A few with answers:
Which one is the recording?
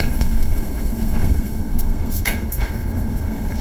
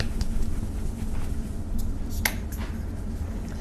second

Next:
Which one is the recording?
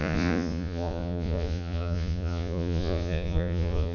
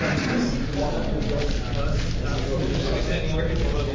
second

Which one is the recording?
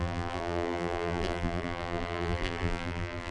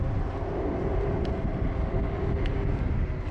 second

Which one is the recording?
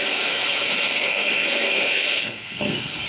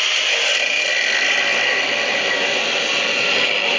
second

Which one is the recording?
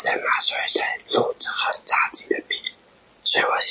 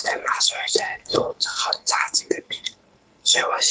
first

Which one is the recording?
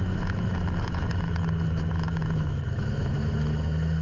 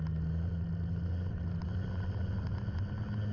second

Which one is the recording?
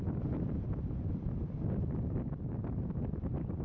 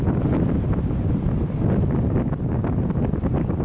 second